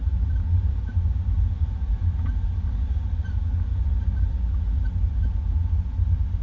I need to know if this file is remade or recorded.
recorded